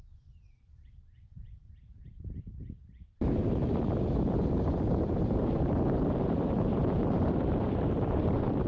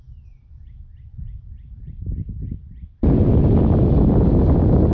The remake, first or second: first